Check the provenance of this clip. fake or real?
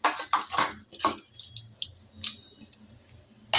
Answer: real